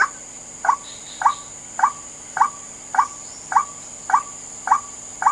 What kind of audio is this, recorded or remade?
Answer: recorded